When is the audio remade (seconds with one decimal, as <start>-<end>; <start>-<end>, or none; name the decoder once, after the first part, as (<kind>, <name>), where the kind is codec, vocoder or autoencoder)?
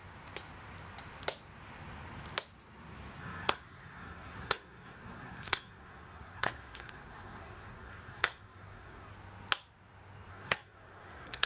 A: 3.2-9.1 (codec, SNAC); 10.3-11.5